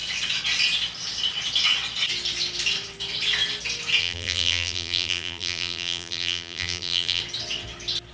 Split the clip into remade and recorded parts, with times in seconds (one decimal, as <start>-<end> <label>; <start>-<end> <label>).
0.0-4.0 recorded; 4.0-7.2 remade; 7.2-8.1 recorded